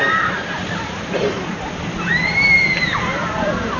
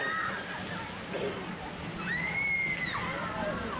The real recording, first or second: second